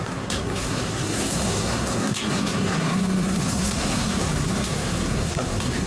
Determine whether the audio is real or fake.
fake